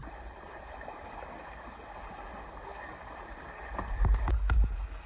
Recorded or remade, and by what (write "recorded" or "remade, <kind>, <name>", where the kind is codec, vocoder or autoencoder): remade, vocoder, BigVGAN v2